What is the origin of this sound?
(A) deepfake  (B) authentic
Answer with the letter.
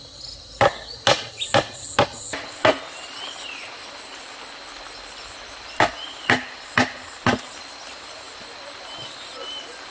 B